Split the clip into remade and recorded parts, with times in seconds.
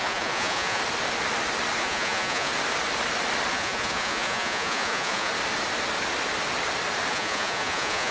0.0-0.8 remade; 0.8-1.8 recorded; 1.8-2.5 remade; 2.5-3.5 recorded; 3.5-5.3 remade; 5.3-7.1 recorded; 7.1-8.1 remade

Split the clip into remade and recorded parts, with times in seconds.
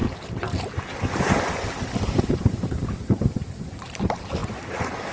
0.0-5.1 recorded